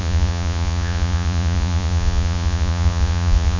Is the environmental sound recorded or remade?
remade